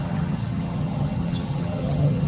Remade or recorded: remade